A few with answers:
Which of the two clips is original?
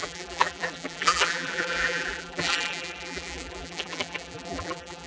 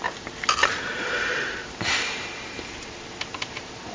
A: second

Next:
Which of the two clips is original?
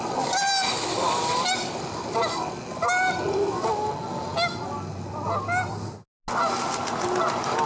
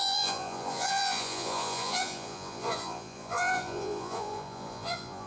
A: first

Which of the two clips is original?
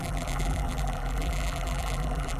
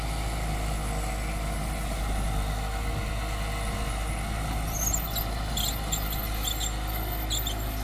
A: second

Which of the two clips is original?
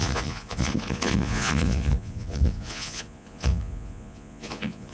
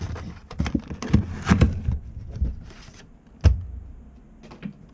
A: second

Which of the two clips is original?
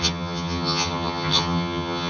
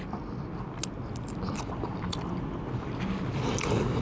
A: second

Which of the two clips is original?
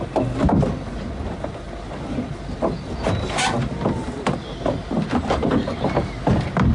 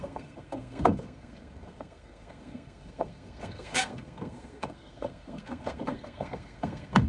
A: first